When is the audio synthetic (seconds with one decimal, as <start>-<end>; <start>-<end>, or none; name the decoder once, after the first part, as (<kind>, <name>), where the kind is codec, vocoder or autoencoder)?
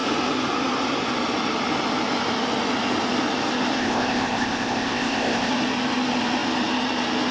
3.8-5.5 (codec, ZipCodec)